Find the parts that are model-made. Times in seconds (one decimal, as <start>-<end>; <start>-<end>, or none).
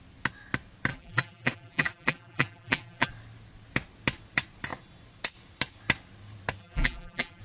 0.9-3.1; 6.6-7.4